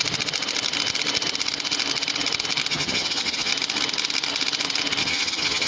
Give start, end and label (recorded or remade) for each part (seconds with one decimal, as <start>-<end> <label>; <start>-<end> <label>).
0.0-2.7 recorded; 2.7-3.5 remade; 3.5-5.0 recorded; 5.0-5.7 remade